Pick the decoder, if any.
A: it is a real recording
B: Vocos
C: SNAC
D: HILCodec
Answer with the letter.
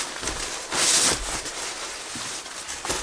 A